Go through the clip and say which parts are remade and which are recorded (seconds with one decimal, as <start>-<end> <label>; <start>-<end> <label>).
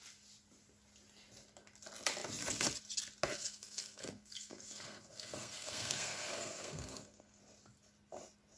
0.0-3.3 recorded; 3.3-7.4 remade; 7.4-8.6 recorded